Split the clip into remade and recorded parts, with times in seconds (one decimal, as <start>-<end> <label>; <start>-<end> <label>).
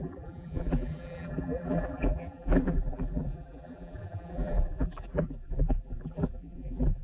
0.0-7.0 remade